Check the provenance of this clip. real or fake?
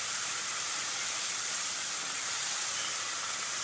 real